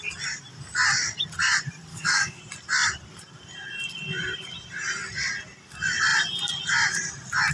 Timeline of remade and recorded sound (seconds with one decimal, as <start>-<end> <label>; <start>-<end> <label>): 0.0-1.9 recorded; 1.9-2.4 remade; 2.4-7.5 recorded